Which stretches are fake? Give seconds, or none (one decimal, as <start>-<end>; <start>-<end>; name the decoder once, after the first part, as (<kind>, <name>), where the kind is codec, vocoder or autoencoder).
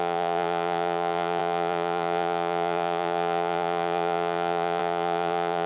0.0-5.7 (vocoder, Vocos)